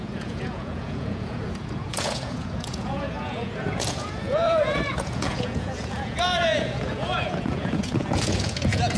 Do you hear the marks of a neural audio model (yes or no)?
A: yes